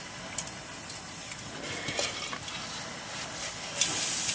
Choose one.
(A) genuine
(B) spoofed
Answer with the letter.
A